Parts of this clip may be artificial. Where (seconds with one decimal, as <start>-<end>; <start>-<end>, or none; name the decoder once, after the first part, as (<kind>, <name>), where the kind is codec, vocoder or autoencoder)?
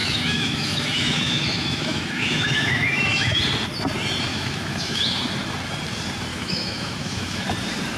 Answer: 0.0-3.4 (autoencoder, DAC-VAE); 4.3-5.2; 6.3-7.4